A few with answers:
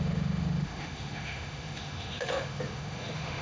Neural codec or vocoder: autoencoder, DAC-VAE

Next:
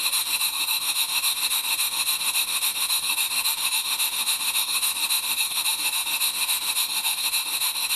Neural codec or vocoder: autoencoder, DAC-VAE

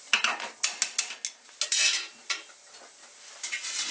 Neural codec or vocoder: none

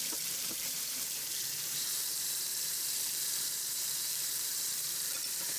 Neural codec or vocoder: vocoder, BigVGAN v2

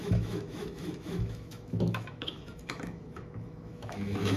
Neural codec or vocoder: autoencoder, DAC-VAE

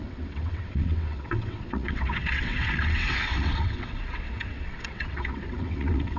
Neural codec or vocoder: vocoder, WaveNeXt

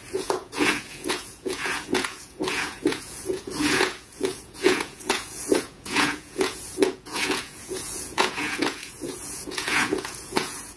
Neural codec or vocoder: vocoder, Vocos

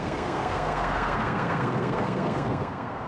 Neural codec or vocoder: codec, SNAC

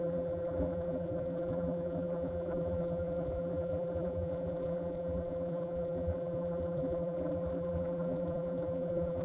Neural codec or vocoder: vocoder, BigVGAN v2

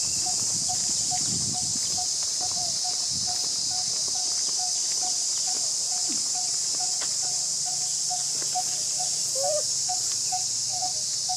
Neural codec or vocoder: none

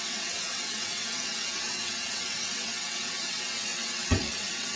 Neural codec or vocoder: vocoder, WaveNeXt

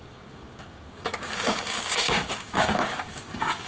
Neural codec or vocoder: codec, DAC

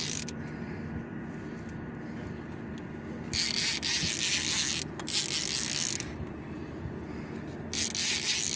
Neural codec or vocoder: none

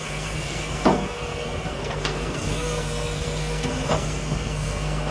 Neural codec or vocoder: codec, SNAC